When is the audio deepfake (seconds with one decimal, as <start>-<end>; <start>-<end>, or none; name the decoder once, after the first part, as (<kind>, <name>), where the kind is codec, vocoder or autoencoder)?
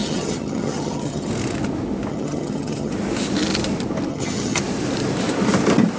0.0-1.3 (vocoder, HiFi-GAN); 2.1-2.9; 4.1-4.6